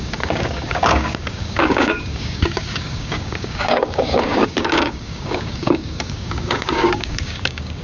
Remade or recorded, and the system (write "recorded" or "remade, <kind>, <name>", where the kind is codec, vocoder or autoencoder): remade, codec, DAC